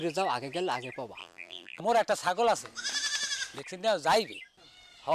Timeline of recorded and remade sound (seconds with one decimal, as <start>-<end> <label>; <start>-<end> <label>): 0.0-1.2 recorded; 1.2-1.8 remade; 1.8-5.1 recorded